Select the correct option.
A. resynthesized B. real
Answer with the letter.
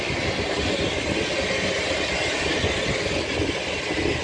B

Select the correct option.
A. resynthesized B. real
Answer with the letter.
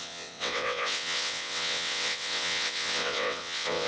A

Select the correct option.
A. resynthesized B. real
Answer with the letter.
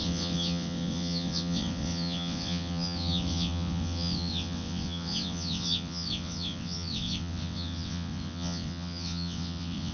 A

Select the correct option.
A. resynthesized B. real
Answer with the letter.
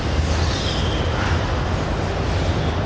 B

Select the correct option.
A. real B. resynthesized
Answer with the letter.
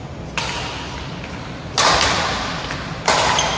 A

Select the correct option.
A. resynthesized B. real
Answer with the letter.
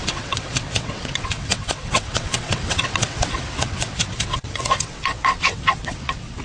A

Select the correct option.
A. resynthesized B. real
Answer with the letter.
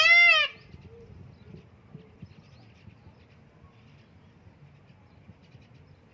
B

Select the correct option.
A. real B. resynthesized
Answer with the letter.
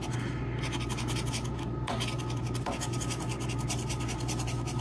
A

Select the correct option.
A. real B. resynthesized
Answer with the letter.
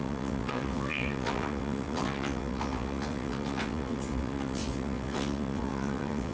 B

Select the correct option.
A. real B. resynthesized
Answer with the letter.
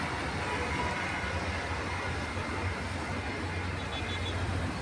A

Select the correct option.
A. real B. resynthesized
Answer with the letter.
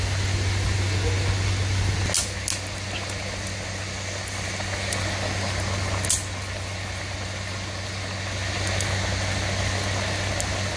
A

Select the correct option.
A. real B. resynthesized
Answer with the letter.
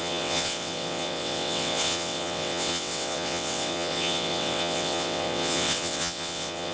B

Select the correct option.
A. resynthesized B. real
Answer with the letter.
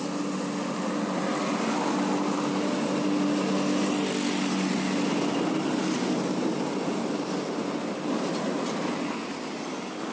B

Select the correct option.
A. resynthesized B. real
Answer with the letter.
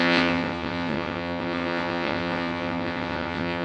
A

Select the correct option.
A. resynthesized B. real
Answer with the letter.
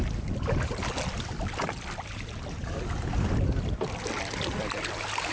B